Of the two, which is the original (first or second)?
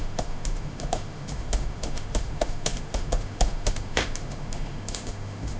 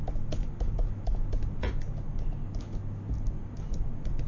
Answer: second